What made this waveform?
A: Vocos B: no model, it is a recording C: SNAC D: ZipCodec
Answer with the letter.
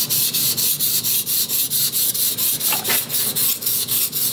B